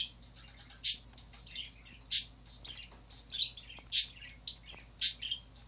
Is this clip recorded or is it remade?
recorded